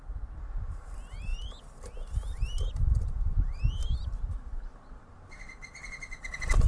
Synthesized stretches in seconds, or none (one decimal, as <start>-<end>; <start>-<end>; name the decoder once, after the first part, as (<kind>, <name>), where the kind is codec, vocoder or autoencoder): none